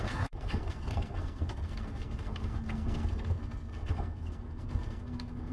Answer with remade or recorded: remade